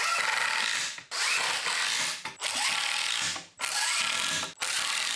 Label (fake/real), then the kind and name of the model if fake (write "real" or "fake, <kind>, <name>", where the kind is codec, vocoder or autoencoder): real